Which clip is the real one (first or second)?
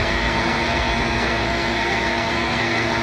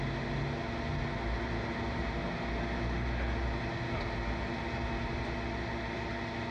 second